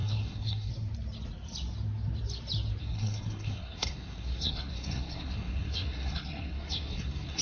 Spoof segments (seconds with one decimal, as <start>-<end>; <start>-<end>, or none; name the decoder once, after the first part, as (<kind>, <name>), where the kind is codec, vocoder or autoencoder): 0.0-0.7 (codec, SNAC); 2.8-7.4